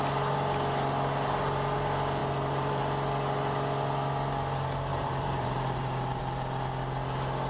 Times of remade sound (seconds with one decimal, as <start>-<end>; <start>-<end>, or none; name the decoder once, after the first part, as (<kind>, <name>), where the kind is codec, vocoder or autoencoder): 2.2-2.8 (vocoder, BigVGAN v2); 4.9-6.2